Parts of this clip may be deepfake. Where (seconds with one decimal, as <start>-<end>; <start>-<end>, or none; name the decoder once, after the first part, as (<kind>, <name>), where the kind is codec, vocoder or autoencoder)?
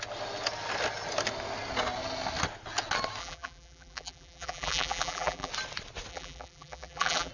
3.2-5.5 (vocoder, BigVGAN v2); 6.1-7.3